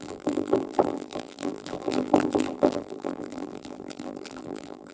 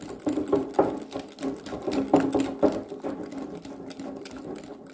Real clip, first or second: second